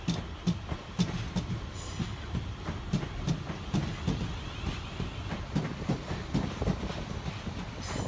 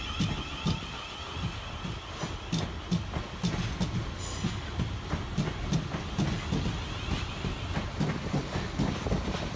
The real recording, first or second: second